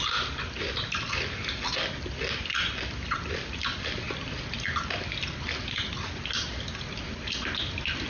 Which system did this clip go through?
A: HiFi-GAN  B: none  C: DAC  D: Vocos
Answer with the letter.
B